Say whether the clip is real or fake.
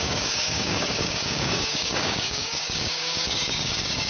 fake